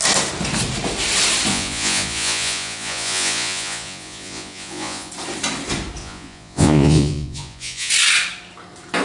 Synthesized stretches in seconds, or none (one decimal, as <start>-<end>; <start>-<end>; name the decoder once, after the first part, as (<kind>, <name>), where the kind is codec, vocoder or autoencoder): 1.5-5.1 (vocoder, Vocos); 6.0-7.9